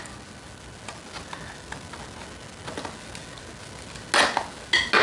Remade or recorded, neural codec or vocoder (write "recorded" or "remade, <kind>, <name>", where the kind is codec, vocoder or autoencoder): recorded